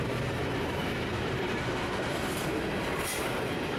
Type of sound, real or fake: fake